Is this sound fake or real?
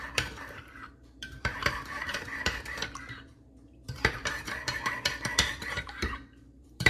fake